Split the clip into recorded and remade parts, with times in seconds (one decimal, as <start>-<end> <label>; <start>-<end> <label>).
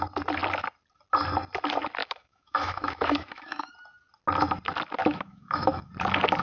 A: 0.0-2.0 recorded; 2.0-3.7 remade; 3.7-5.0 recorded; 5.0-5.9 remade; 5.9-6.4 recorded